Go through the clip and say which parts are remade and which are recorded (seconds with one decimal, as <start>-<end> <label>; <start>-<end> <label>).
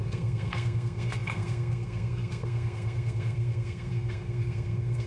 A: 0.0-5.1 remade